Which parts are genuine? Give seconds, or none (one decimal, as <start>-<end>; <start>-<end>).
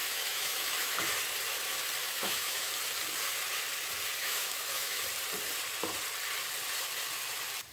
1.0-2.0; 2.7-4.2; 5.0-7.7